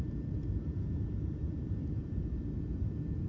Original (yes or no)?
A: no